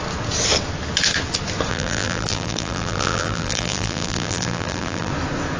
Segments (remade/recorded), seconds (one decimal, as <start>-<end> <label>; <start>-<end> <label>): 0.0-1.7 recorded; 1.7-5.1 remade; 5.1-5.6 recorded